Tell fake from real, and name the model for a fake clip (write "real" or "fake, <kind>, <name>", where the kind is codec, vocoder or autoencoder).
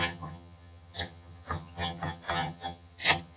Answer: fake, vocoder, HiFi-GAN